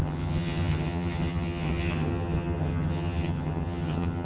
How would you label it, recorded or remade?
remade